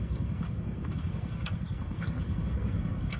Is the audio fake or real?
fake